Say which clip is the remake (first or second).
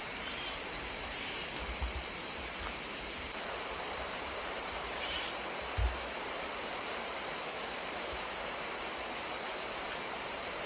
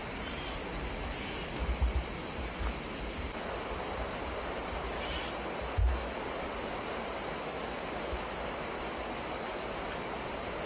first